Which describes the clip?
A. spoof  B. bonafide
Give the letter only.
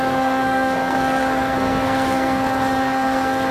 A